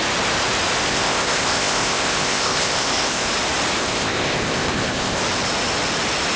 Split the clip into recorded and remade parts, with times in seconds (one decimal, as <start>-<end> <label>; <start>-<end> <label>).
0.0-0.9 recorded; 0.9-3.3 remade; 3.3-3.8 recorded; 3.8-5.2 remade; 5.2-6.4 recorded